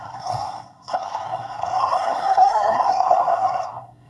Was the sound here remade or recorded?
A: remade